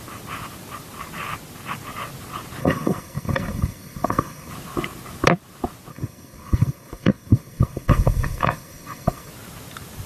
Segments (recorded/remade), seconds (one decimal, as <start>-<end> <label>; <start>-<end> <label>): 0.0-2.6 recorded; 2.6-4.5 remade; 4.5-5.9 recorded; 5.9-9.3 remade; 9.3-10.1 recorded